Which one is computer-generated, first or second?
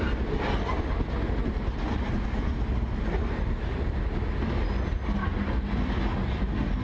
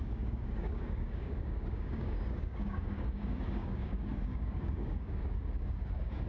second